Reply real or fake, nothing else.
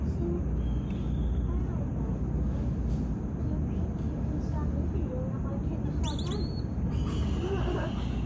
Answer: real